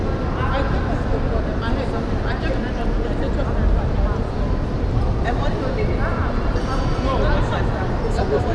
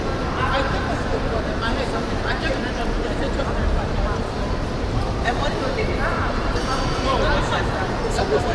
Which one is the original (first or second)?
first